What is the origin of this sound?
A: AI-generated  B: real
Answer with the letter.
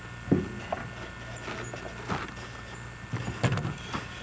B